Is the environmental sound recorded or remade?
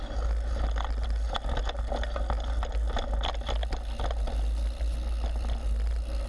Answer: recorded